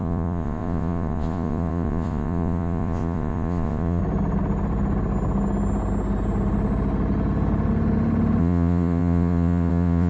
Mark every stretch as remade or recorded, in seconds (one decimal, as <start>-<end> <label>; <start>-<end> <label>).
0.0-4.0 remade; 4.0-8.4 recorded; 8.4-10.1 remade